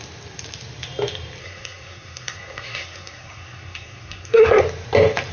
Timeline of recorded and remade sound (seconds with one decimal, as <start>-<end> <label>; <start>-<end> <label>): 0.0-1.4 recorded; 1.4-4.6 remade; 4.6-5.3 recorded